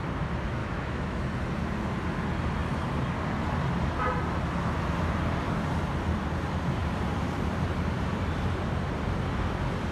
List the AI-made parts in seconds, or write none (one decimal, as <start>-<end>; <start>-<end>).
0.6-1.2